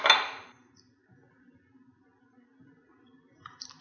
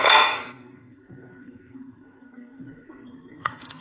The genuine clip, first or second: first